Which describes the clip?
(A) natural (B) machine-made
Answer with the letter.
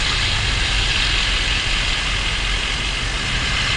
A